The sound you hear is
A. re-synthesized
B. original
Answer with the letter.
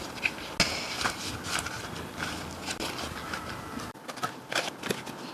B